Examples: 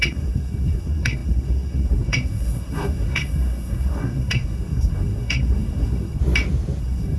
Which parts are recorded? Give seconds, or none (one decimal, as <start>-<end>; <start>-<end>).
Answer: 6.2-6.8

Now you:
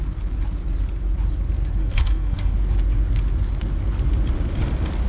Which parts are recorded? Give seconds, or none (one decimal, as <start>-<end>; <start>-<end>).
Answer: 0.0-1.8; 2.5-5.1

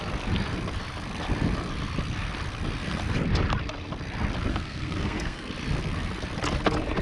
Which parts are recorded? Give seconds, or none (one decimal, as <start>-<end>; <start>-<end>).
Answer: 0.0-4.5; 5.5-7.0